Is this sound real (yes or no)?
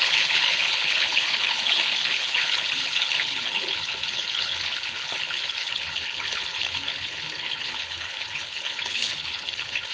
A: no